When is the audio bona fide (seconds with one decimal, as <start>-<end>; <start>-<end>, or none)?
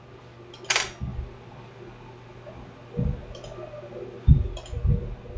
0.0-5.4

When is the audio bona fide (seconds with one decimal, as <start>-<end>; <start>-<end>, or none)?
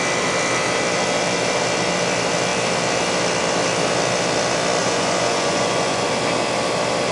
0.0-4.8; 6.1-7.1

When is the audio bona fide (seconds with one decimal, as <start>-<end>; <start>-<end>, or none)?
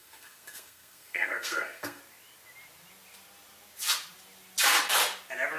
2.0-5.6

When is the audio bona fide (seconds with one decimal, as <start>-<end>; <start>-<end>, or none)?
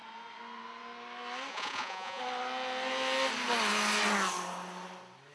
0.0-1.5; 2.2-5.3